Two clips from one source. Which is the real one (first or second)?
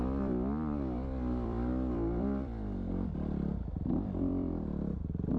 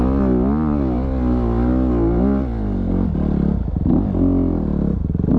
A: second